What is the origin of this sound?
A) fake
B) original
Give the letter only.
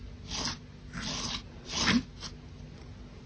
B